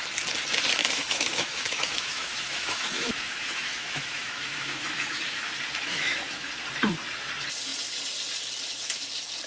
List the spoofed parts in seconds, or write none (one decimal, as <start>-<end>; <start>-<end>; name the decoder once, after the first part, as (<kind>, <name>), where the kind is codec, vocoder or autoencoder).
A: 0.8-5.5 (autoencoder, DAC-VAE); 5.9-6.5